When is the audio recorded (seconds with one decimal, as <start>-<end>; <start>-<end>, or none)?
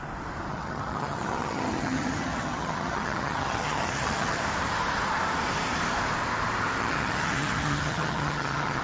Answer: 0.0-0.5; 4.4-6.8